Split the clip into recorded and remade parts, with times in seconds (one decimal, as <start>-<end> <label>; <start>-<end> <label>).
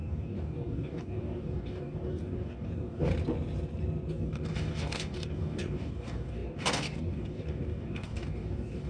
0.0-3.1 remade; 3.1-4.1 recorded; 4.1-8.9 remade